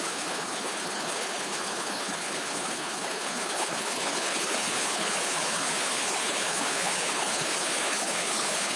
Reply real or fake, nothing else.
fake